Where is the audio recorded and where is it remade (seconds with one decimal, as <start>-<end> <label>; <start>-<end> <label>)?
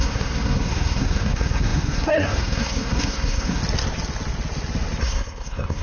0.0-3.6 remade; 3.6-5.0 recorded; 5.0-5.8 remade